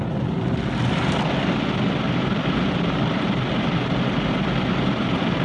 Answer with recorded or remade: recorded